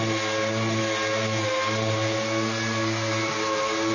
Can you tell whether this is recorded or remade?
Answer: recorded